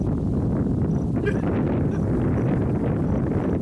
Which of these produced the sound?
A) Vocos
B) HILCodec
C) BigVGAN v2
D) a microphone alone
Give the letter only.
D